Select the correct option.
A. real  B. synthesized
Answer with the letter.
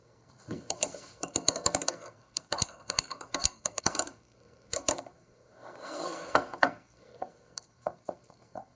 B